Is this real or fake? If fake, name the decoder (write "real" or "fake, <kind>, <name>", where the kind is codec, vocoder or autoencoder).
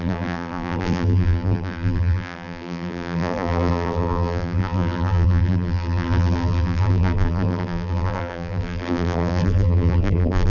fake, vocoder, BigVGAN v2